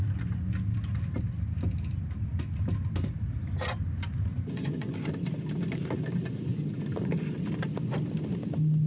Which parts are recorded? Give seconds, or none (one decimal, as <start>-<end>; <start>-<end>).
0.0-4.3; 4.9-8.9